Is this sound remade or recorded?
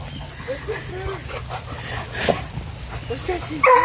recorded